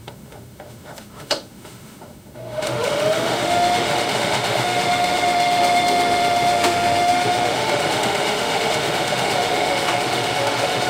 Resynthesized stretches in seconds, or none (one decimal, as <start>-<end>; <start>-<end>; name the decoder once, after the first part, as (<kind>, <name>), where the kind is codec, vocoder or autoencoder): 0.0-10.9 (autoencoder, DAC-VAE)